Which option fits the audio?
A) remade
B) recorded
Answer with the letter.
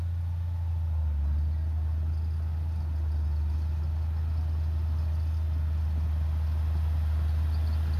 B